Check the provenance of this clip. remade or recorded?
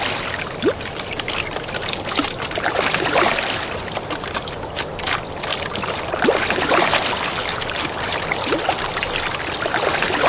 recorded